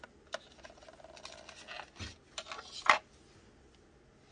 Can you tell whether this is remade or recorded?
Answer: recorded